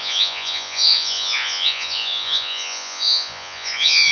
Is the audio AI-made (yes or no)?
yes